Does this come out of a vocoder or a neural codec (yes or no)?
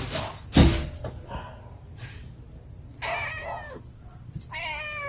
no